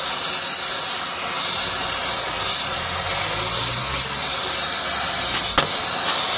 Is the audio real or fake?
real